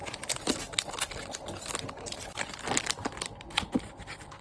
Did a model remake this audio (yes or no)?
no